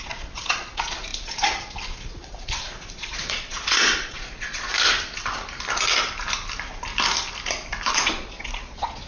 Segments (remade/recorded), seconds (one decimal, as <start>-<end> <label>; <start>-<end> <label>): 0.0-4.7 remade; 4.7-7.9 recorded; 7.9-9.1 remade